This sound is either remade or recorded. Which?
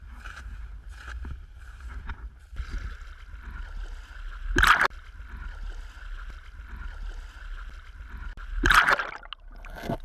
recorded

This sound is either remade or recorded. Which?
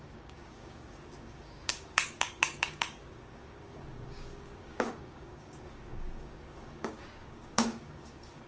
remade